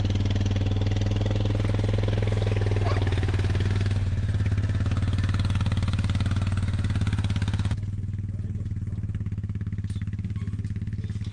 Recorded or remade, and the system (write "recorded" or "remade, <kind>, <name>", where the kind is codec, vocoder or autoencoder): recorded